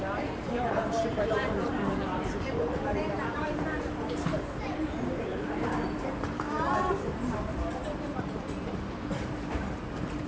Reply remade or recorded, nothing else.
remade